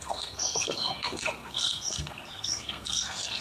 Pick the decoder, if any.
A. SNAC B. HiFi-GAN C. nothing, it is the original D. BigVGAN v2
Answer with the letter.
A